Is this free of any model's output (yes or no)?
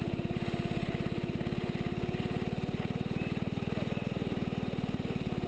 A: yes